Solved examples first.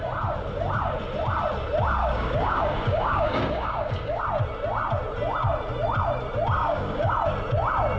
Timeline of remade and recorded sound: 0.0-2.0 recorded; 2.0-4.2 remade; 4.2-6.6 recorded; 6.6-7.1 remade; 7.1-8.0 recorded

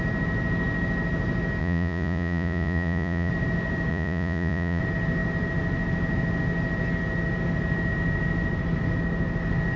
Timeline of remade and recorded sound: 0.0-1.6 recorded; 1.6-3.3 remade; 3.3-3.9 recorded; 3.9-4.8 remade; 4.8-9.8 recorded